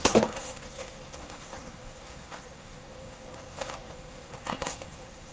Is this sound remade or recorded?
remade